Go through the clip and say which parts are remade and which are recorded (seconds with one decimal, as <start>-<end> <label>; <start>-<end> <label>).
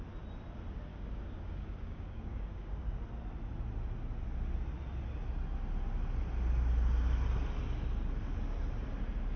0.0-0.9 recorded; 0.9-3.0 remade; 3.0-9.4 recorded